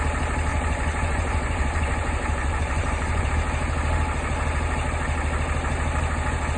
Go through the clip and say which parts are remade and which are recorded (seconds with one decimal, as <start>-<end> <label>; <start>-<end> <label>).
0.0-0.5 recorded; 0.5-3.3 remade; 3.3-6.6 recorded